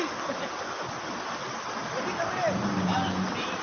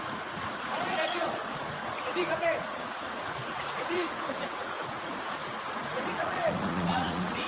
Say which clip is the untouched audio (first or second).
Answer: first